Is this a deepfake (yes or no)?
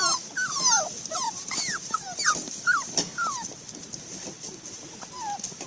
no